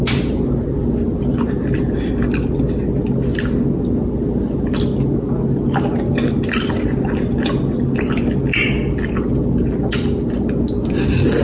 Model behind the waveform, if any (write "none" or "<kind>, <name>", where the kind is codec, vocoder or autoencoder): none